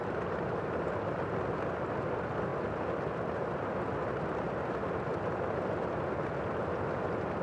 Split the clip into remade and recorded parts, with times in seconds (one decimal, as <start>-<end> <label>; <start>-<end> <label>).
0.0-1.6 remade; 1.6-7.4 recorded